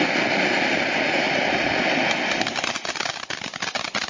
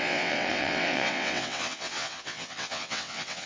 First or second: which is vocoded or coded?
second